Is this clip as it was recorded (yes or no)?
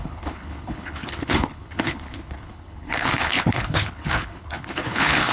no